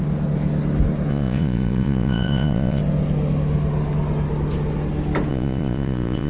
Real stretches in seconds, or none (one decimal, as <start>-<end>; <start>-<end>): 0.0-1.1; 2.8-5.3